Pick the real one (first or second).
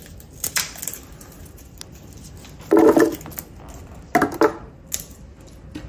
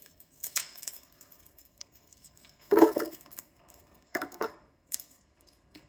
first